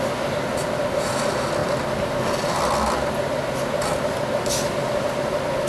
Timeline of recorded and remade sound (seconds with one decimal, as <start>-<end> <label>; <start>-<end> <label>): 0.0-5.7 recorded